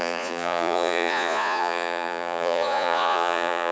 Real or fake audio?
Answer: fake